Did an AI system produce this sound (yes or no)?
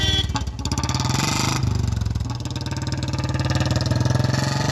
no